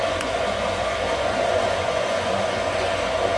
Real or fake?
fake